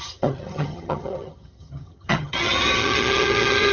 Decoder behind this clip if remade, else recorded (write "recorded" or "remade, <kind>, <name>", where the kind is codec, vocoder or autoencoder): remade, vocoder, HiFi-GAN